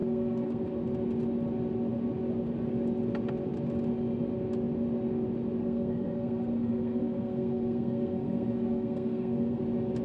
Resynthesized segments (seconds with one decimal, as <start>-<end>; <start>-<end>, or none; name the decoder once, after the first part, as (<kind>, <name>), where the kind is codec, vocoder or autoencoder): 0.0-0.6 (codec, SNAC); 5.6-9.6